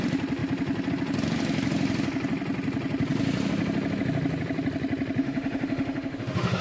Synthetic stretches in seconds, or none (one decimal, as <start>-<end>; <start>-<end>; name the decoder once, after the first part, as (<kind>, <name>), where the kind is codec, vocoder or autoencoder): 5.2-6.6 (autoencoder, DAC-VAE)